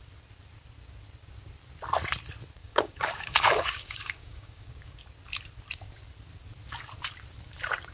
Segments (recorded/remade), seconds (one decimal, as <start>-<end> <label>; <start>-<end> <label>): 0.0-2.6 recorded; 2.6-5.0 remade; 5.0-7.9 recorded